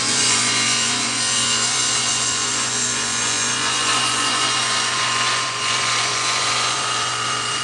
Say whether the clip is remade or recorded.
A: remade